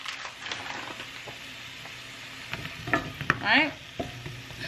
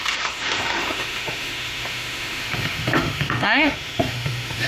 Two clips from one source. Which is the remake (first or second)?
second